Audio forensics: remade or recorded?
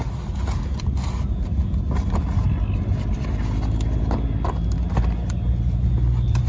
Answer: recorded